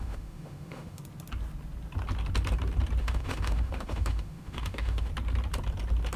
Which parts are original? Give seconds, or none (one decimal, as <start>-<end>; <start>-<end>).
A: 1.0-3.0; 5.1-6.2